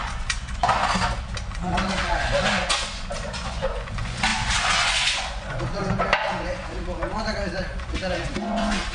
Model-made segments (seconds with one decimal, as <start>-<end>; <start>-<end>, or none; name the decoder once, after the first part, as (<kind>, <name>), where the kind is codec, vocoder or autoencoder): 0.0-0.8 (vocoder, Vocos); 1.5-8.9